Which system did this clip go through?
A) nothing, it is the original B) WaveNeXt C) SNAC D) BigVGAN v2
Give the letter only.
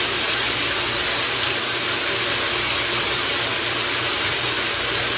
A